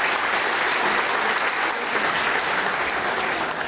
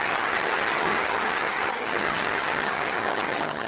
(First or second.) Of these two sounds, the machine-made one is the second